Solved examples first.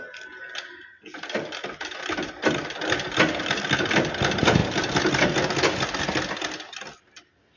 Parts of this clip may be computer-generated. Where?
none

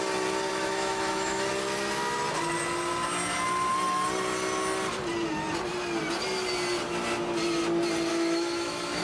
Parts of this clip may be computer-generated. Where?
0.5-1.5; 8.1-9.0

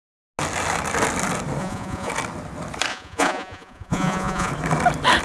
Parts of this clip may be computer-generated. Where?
1.6-2.1; 2.9-4.5

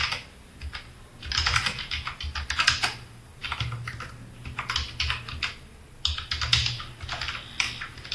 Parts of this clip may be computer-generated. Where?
none

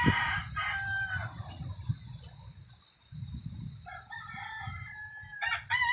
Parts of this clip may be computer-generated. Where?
none